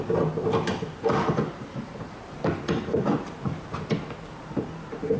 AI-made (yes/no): yes